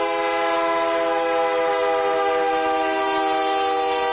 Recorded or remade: recorded